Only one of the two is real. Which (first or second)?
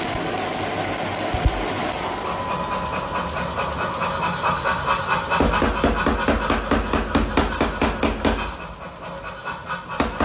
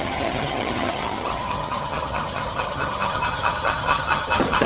first